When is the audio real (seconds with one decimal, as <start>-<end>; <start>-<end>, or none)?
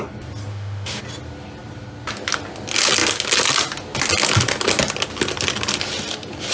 0.0-0.5; 1.0-6.5